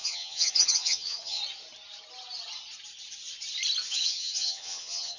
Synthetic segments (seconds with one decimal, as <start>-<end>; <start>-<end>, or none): 0.0-1.4; 3.9-5.2

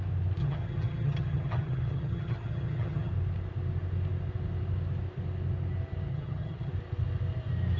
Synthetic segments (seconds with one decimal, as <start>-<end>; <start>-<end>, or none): 0.4-3.1; 6.1-6.7